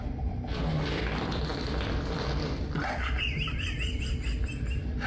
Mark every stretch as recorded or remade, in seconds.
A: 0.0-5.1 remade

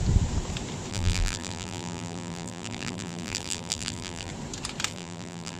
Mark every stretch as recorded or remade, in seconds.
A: 0.0-0.9 recorded; 0.9-4.3 remade; 4.3-4.9 recorded; 4.9-5.6 remade